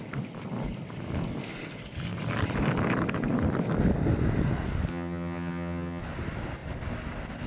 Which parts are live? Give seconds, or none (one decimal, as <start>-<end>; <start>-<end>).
0.0-4.9; 6.0-7.5